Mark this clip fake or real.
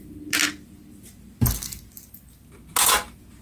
real